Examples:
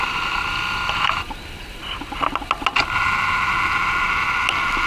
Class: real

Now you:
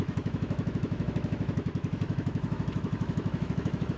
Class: fake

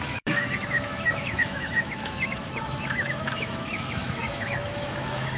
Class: fake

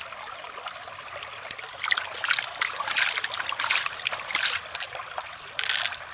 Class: real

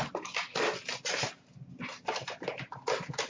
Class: real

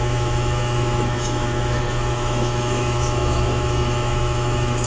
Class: fake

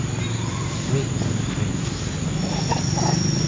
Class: real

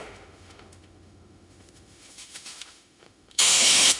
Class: fake